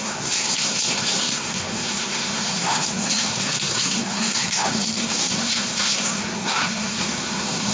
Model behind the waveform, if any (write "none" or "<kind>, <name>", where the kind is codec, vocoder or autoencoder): codec, SNAC